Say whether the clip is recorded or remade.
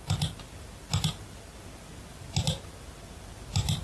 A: recorded